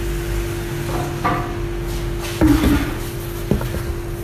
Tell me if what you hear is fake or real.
real